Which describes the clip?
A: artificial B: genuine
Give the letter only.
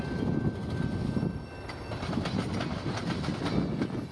B